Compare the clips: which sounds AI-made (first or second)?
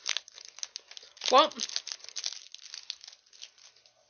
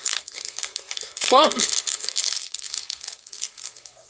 second